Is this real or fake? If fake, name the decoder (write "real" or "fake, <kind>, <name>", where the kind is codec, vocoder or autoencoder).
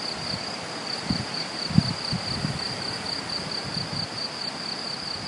real